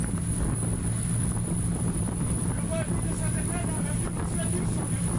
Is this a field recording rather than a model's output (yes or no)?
yes